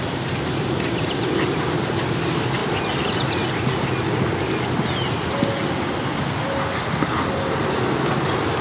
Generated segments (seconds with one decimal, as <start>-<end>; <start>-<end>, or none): none